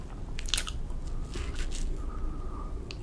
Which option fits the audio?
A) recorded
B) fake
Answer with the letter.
A